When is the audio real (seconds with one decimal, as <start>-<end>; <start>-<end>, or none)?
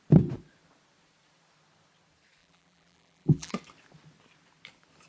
0.0-2.4; 3.5-5.1